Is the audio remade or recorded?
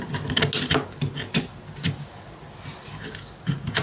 recorded